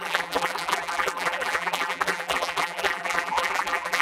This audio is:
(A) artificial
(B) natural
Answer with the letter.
A